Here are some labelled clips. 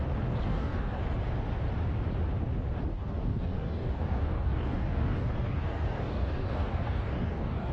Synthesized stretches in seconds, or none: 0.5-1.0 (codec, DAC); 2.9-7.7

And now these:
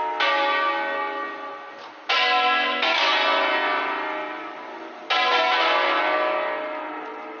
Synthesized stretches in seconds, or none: 3.7-5.0 (vocoder, BigVGAN v2)

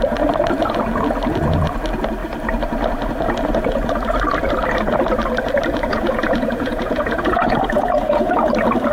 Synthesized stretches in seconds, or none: 5.9-8.5 (vocoder, Vocos)

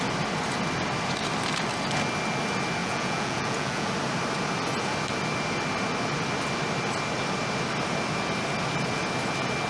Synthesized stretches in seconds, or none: 2.8-3.9 (vocoder, Vocos)

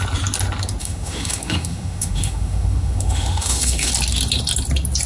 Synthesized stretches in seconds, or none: 0.8-3.9 (autoencoder, DAC-VAE)